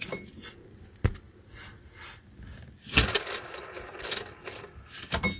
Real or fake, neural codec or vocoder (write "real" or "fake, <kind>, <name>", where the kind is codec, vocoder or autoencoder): real